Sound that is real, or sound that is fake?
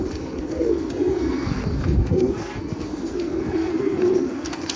fake